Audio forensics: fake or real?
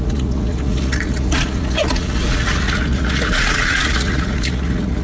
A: fake